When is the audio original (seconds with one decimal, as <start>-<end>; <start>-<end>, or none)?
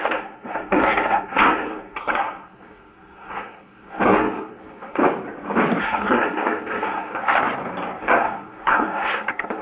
5.0-5.8; 7.4-8.0